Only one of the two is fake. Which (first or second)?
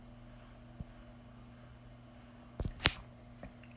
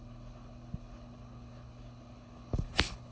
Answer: second